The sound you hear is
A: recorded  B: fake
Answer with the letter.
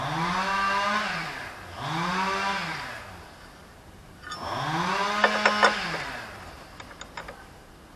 A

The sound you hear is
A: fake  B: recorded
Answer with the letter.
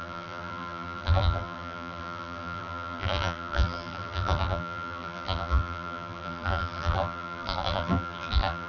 A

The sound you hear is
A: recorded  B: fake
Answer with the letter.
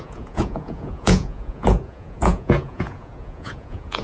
B